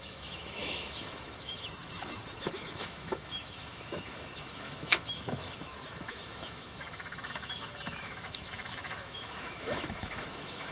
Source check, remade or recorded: remade